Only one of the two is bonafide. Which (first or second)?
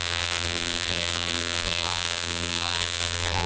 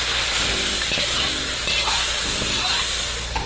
second